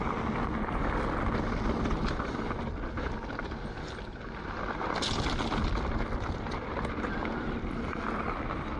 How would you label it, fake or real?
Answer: real